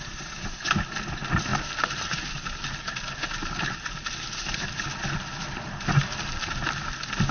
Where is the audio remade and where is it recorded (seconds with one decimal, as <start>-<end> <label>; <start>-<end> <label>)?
0.0-7.3 recorded

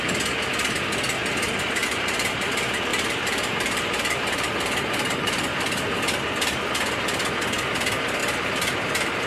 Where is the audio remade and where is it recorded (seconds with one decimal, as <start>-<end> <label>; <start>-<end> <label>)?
0.0-1.8 recorded; 1.8-2.5 remade; 2.5-2.9 recorded; 2.9-5.9 remade; 5.9-8.2 recorded; 8.2-9.3 remade

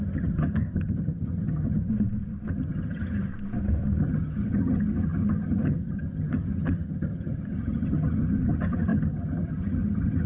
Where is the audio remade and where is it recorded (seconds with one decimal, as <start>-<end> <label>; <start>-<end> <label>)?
0.0-1.9 remade; 1.9-2.5 recorded; 2.5-3.3 remade; 3.3-4.0 recorded; 4.0-10.3 remade

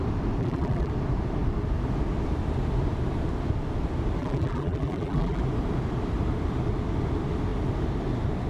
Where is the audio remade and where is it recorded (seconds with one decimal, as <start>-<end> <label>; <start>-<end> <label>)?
0.0-0.4 recorded; 0.4-0.9 remade; 0.9-4.2 recorded; 4.2-5.4 remade; 5.4-8.5 recorded

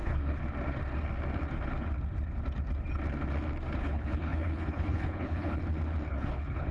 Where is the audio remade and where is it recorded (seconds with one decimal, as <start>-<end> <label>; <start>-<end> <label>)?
0.0-0.4 remade; 0.4-3.8 recorded; 3.8-5.6 remade; 5.6-6.1 recorded; 6.1-6.7 remade

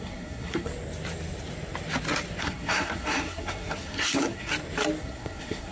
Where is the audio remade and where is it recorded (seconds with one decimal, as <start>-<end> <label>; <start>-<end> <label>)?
0.0-0.7 remade; 0.7-2.4 recorded; 2.4-4.5 remade; 4.5-5.0 recorded; 5.0-5.7 remade